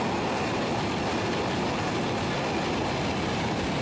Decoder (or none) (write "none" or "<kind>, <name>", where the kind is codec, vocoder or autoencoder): none